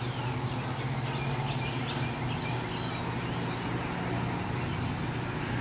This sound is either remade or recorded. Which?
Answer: recorded